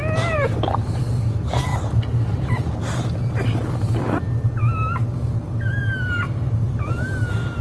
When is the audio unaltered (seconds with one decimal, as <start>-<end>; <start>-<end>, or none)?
0.0-7.6